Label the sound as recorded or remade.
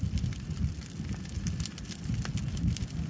recorded